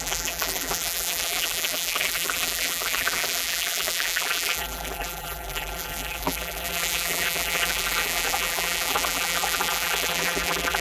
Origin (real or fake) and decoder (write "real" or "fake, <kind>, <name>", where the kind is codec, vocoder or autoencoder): fake, vocoder, BigVGAN v2